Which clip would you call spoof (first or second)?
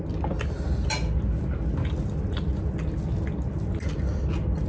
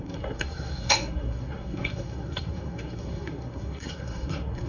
second